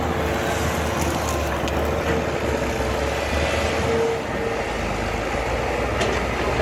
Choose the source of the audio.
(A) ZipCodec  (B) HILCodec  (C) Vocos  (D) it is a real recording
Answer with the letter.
D